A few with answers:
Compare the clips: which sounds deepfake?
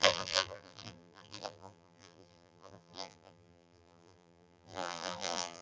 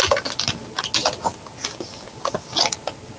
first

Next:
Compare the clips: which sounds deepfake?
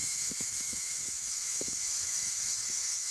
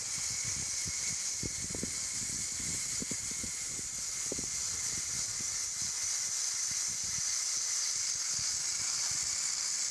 first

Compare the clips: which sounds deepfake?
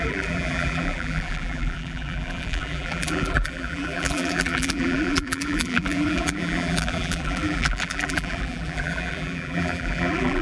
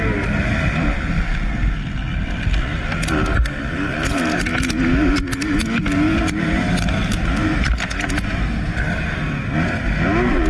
first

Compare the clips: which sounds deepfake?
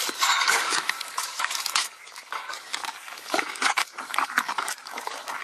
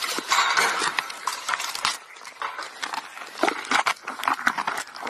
first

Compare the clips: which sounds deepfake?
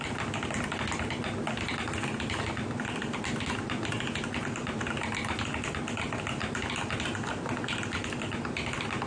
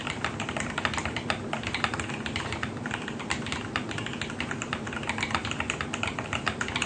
second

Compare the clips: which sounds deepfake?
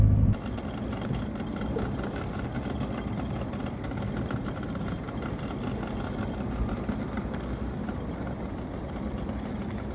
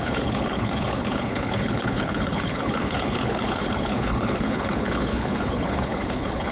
second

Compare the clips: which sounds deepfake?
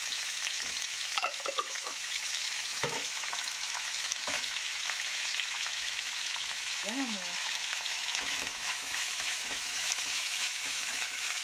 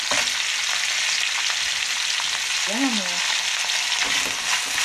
first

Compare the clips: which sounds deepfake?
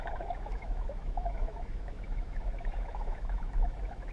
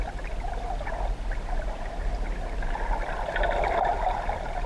first